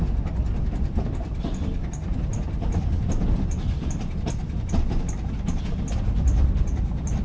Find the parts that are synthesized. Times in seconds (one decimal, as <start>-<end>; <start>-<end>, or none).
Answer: none